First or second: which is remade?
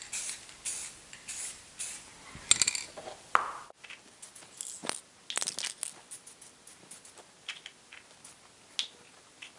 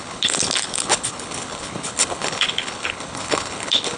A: second